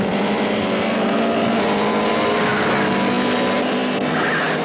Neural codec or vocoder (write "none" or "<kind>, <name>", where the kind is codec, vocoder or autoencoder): none